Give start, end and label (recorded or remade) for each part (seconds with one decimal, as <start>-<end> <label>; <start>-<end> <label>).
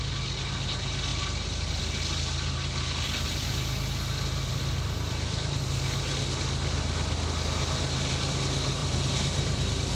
0.0-1.1 recorded; 1.1-1.8 remade; 1.8-4.5 recorded; 4.5-5.6 remade; 5.6-8.8 recorded; 8.8-9.9 remade